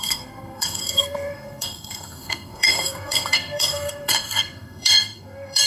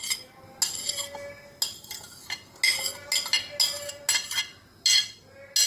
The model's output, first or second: first